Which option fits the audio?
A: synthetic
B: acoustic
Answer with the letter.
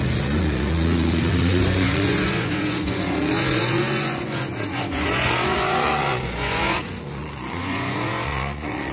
A